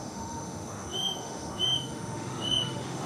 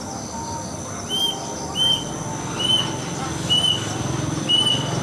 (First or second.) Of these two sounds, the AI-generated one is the first